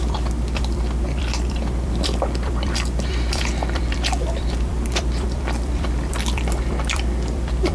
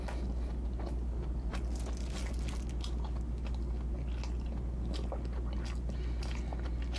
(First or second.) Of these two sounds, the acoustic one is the second